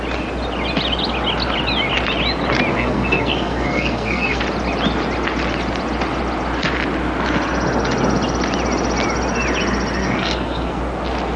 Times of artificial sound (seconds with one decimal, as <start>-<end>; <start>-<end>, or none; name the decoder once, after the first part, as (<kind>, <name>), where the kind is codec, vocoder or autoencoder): 2.7-4.4 (codec, SNAC); 10.0-10.8